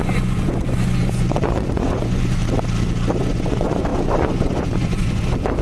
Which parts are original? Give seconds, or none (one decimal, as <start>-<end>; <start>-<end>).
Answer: 2.4-3.2